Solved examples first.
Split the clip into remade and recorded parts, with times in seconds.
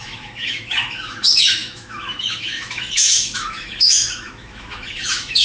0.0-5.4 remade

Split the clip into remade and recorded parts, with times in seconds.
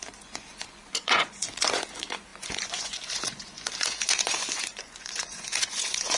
0.0-6.2 remade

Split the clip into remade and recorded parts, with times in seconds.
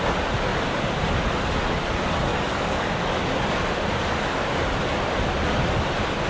0.0-2.3 recorded; 2.3-3.2 remade; 3.2-4.1 recorded; 4.1-4.6 remade; 4.6-6.3 recorded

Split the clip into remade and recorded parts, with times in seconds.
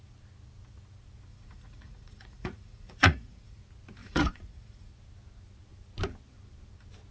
0.0-1.3 recorded; 1.3-3.6 remade; 3.6-4.0 recorded; 4.0-4.9 remade; 4.9-7.1 recorded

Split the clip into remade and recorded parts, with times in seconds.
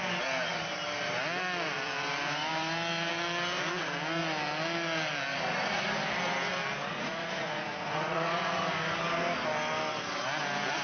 0.0-5.3 recorded; 5.3-5.9 remade; 5.9-6.9 recorded; 6.9-8.6 remade; 8.6-10.8 recorded